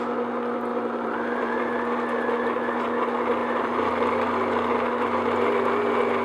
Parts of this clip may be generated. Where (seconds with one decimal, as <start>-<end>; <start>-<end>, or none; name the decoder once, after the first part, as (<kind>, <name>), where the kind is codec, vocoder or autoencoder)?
0.7-1.6 (vocoder, BigVGAN v2); 3.4-3.9

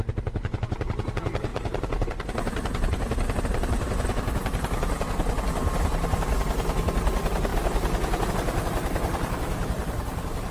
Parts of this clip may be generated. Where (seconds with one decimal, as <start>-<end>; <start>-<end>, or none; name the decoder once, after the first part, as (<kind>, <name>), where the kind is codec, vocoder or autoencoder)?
none

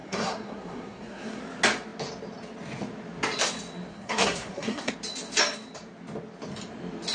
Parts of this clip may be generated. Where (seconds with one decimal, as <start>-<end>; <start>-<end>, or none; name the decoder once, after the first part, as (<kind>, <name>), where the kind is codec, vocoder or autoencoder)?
0.0-1.4 (codec, SNAC); 3.9-4.9

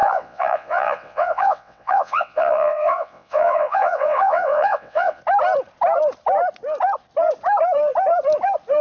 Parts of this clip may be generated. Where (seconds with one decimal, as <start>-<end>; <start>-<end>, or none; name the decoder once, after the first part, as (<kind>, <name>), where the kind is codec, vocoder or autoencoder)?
0.0-5.2 (vocoder, WaveNeXt)